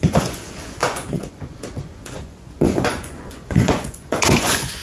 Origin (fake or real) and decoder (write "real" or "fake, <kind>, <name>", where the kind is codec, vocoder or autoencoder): fake, vocoder, Vocos